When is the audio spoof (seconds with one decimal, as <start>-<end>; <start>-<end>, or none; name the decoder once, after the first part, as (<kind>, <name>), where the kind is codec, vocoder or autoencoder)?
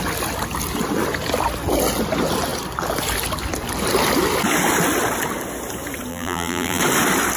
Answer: 6.1-6.8 (vocoder, BigVGAN v2)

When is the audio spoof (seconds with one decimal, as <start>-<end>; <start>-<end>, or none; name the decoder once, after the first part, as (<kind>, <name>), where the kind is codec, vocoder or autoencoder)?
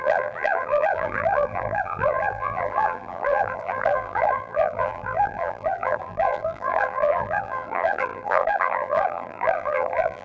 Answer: 0.0-10.2 (vocoder, BigVGAN v2)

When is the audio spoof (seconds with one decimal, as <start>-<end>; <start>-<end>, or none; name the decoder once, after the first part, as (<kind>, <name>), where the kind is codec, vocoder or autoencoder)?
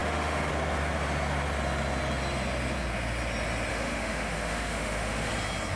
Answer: 0.0-0.5 (autoencoder, DAC-VAE); 3.7-5.3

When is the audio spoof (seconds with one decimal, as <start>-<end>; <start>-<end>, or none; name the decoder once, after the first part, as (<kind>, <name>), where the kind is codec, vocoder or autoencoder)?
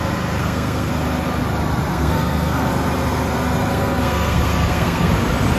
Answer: 0.4-0.9 (codec, SNAC); 1.9-2.7; 3.7-5.1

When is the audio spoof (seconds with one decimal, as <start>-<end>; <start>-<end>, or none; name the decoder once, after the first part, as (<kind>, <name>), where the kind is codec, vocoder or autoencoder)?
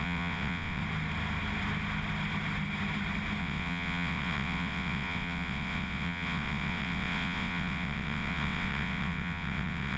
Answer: 0.0-0.8 (vocoder, WaveNeXt); 3.4-10.0